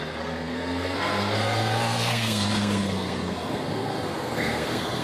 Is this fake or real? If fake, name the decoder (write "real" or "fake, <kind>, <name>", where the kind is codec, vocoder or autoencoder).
fake, codec, SNAC